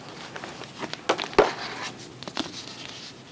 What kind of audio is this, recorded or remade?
recorded